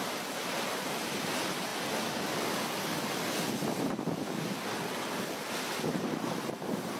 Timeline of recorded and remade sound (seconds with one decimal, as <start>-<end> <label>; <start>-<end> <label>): 0.0-1.7 remade; 1.7-5.9 recorded; 5.9-7.0 remade